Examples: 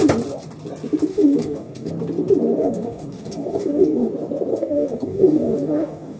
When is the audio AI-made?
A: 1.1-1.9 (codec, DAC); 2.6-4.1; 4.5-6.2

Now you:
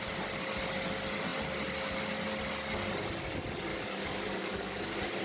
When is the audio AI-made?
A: 3.7-4.8 (codec, DAC)

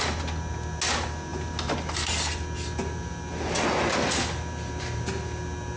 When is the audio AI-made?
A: none

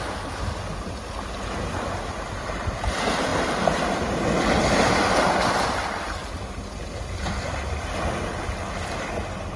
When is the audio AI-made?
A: none

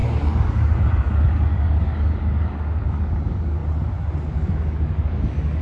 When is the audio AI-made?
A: 0.0-3.6 (codec, DAC); 4.3-5.6

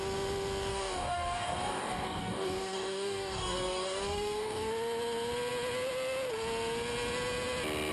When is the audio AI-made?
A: 0.7-4.7 (codec, DAC)

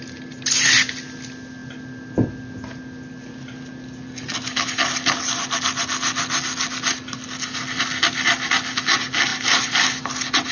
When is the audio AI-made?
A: none